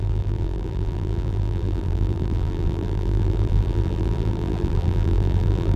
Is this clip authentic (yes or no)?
no